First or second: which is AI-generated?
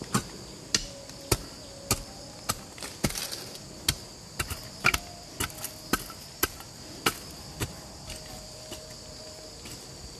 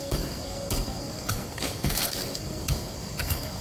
second